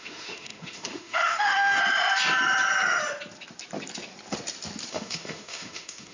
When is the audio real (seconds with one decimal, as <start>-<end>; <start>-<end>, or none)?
1.8-4.9